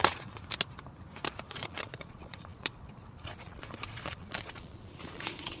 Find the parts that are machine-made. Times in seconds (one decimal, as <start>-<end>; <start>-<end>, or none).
0.0-0.5; 1.5-5.6